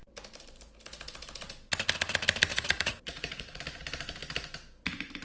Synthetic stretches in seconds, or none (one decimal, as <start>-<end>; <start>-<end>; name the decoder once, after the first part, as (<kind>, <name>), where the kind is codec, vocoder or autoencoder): 2.5-3.6 (vocoder, Vocos)